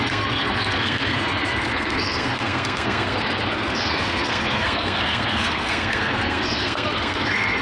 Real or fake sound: fake